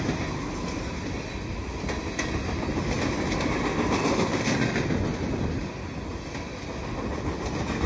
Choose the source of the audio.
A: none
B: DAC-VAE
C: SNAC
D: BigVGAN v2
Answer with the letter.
A